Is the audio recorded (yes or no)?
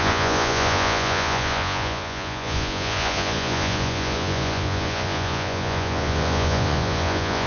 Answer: no